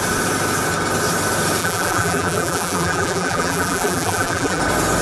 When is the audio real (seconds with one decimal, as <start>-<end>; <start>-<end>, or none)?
0.0-1.6; 4.6-5.0